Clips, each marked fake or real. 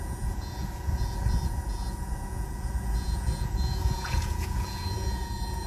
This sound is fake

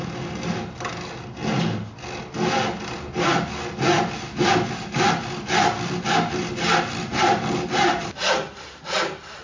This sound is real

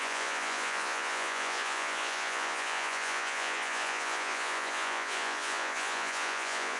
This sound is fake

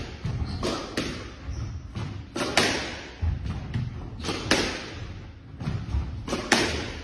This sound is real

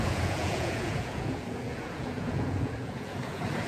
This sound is fake